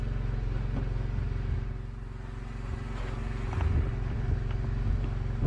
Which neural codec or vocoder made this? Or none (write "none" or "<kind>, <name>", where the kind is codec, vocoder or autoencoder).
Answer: none